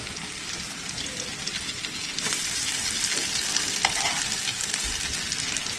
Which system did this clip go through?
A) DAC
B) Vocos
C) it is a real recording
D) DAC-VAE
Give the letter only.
C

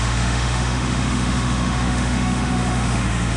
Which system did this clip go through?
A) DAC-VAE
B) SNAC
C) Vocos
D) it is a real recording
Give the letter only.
A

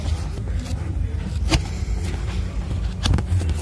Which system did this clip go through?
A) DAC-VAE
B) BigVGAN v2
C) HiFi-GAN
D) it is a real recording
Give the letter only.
D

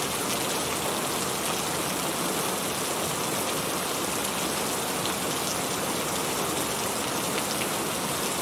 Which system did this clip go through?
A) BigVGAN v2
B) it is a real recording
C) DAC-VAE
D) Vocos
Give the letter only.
B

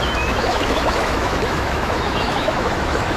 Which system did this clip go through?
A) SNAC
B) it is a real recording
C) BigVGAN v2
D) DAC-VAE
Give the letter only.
D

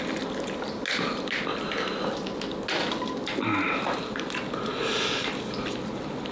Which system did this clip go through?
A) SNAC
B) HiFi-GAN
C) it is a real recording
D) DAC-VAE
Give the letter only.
C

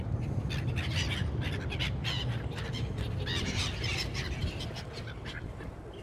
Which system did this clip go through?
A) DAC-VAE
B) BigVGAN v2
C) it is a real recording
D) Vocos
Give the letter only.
C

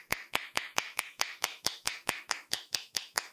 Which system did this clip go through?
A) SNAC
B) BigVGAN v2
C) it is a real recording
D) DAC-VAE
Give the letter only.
D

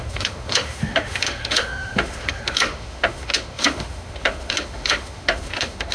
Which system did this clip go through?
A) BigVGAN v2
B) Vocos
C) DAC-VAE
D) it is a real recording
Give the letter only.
C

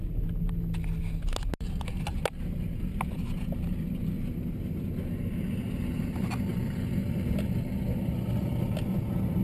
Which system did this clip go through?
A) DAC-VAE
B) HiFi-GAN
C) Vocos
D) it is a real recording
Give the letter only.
D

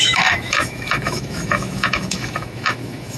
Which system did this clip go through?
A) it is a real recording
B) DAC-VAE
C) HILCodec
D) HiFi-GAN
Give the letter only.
B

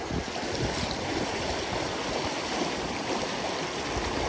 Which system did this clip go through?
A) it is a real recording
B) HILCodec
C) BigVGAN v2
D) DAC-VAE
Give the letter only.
A